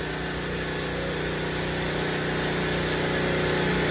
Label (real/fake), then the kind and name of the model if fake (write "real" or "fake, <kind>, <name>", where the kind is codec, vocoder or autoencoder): real